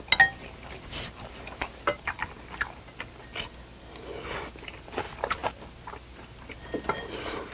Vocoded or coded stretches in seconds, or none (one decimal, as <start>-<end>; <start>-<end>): none